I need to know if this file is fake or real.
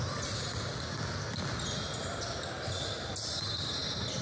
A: real